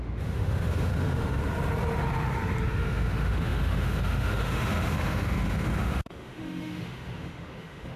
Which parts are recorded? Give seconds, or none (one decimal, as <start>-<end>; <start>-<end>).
1.4-2.7